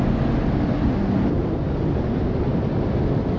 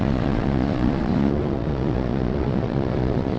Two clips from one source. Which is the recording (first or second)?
first